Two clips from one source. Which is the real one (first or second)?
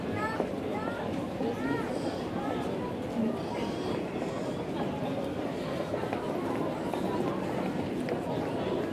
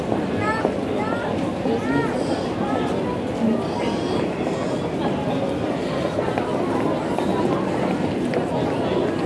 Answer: second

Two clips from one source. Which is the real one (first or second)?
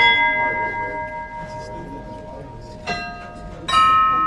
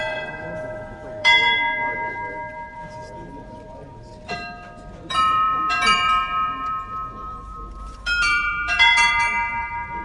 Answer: first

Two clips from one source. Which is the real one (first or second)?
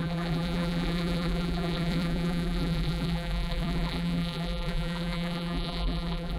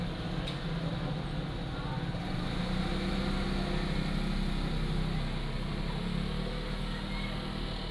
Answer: second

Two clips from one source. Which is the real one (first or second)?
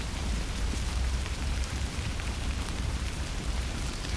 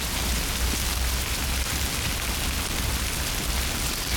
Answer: second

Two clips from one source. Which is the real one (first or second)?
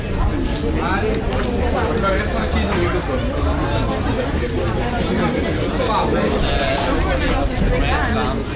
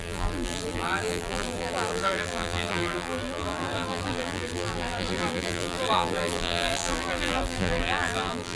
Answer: first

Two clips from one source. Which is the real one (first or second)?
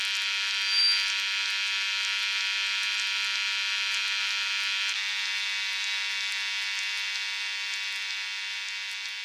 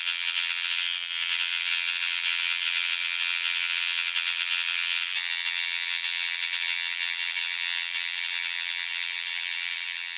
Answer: first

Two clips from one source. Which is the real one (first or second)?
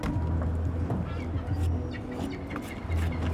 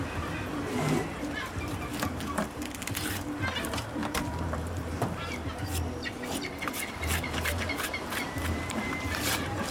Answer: first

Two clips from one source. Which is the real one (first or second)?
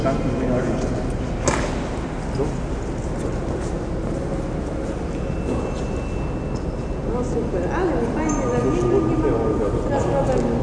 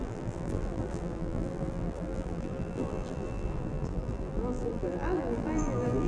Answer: first